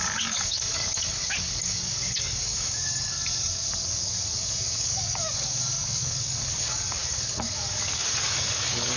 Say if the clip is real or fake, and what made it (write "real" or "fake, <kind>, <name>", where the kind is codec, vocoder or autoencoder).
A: fake, codec, DAC